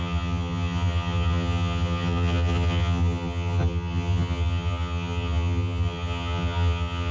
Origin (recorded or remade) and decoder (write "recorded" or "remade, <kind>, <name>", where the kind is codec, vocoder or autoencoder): remade, vocoder, HiFi-GAN